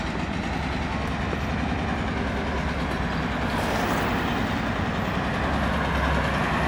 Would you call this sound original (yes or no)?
yes